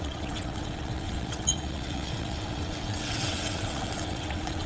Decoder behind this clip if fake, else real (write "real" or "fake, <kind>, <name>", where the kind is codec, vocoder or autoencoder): fake, vocoder, WaveNeXt